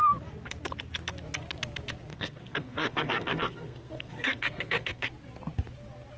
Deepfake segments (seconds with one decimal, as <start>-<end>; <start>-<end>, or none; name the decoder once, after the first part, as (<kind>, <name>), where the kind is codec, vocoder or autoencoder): 2.1-5.1 (codec, SNAC)

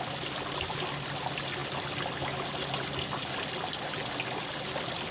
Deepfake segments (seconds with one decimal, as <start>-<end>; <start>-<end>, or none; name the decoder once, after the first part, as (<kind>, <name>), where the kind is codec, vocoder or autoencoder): none

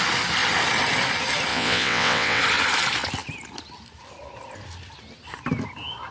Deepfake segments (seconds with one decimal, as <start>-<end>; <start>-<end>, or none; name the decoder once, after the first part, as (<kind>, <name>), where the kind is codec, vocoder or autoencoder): 1.5-2.4 (vocoder, WaveNeXt)

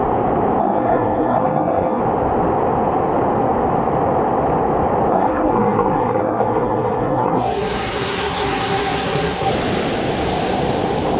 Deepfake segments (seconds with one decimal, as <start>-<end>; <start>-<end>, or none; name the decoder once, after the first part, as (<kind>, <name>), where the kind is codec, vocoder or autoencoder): 0.6-2.0 (codec, SNAC); 5.1-9.5

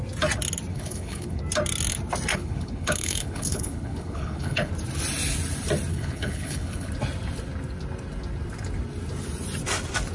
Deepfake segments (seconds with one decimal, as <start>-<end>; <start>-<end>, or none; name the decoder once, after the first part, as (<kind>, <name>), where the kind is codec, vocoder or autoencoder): 0.7-1.4 (codec, HILCodec); 2.3-4.7; 5.9-6.9

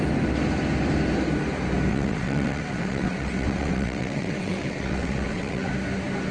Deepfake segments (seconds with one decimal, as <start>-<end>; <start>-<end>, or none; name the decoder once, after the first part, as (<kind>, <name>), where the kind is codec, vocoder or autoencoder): 1.9-5.7 (vocoder, WaveNeXt)

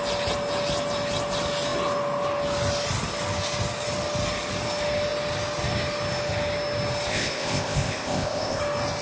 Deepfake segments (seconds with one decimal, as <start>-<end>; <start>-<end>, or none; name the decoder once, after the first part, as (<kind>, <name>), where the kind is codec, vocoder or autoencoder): 7.1-8.6 (codec, ZipCodec)